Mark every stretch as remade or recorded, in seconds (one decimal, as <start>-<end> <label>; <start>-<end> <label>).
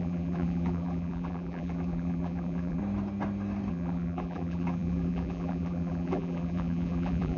0.0-2.8 remade; 2.8-3.7 recorded; 3.7-7.4 remade